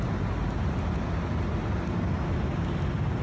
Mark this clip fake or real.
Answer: real